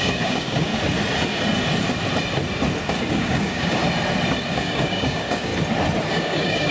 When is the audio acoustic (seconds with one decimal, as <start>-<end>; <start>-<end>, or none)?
0.7-3.1; 3.8-4.5; 5.5-6.1